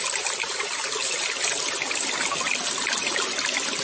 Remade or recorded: recorded